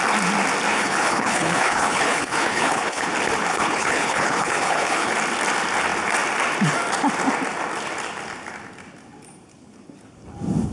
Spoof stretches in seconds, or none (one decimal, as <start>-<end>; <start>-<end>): 0.7-3.1; 3.5-5.1